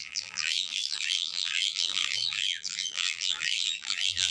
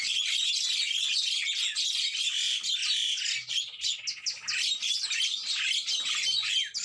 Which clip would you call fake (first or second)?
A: first